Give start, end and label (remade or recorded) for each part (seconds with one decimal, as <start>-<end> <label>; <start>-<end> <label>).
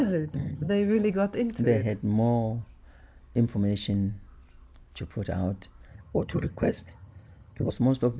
0.0-1.1 remade; 1.1-5.9 recorded; 5.9-7.7 remade; 7.7-8.2 recorded